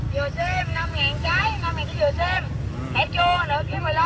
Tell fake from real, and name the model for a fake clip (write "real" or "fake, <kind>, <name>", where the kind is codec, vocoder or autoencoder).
real